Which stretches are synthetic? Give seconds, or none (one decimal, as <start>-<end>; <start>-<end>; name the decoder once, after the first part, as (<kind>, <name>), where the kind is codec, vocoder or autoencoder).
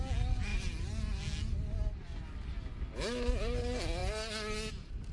none